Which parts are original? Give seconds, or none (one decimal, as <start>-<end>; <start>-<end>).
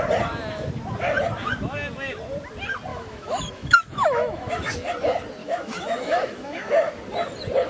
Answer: 0.0-2.9; 4.7-5.4; 6.9-7.7